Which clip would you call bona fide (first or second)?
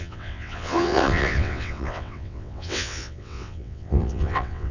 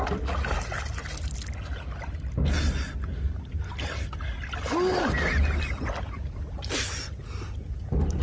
second